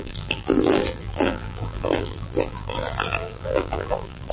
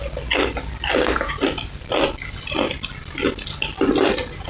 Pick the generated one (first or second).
first